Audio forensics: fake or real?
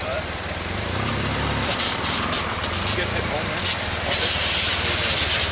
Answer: fake